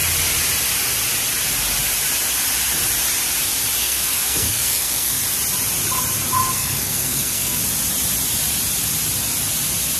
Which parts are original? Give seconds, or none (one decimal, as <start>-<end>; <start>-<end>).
0.0-3.8; 5.2-6.4; 7.6-10.0